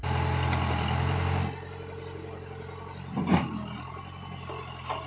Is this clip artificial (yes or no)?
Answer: no